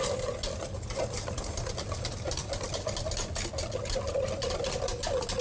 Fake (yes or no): no